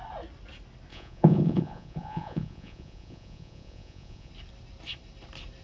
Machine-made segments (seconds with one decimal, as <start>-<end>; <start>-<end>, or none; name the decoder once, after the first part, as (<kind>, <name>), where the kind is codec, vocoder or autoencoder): 0.9-4.3 (vocoder, Vocos)